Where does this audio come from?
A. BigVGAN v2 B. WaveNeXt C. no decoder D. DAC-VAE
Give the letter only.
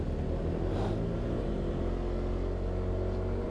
C